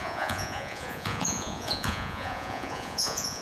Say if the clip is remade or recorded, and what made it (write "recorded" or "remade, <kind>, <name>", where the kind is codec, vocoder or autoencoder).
remade, vocoder, Vocos